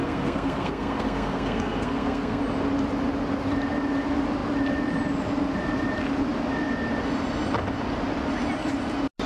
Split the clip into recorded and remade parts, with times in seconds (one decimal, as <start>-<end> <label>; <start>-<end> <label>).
0.0-2.4 remade; 2.4-9.3 recorded